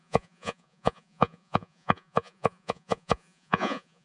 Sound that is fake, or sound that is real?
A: fake